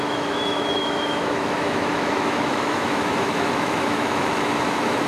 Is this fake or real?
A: fake